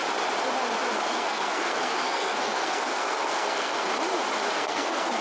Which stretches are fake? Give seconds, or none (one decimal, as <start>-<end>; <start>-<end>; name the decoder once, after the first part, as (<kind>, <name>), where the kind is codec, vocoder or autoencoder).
1.0-3.9 (codec, SNAC); 4.5-5.2